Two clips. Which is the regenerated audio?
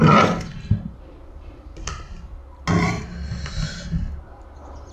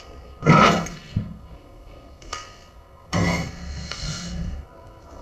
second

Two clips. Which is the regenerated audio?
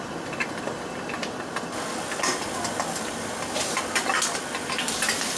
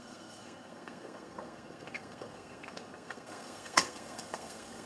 second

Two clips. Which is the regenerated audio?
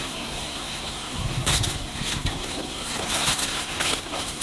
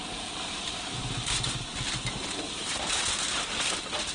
first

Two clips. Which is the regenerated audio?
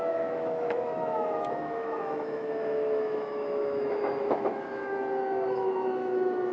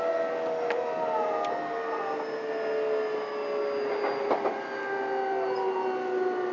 first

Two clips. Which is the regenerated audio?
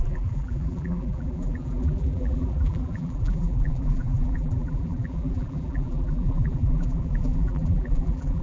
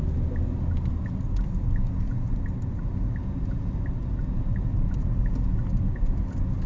first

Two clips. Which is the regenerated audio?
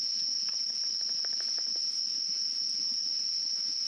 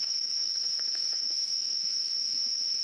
second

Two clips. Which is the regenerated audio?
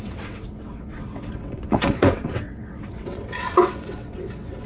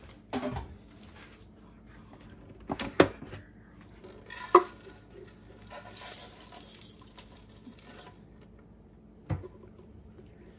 first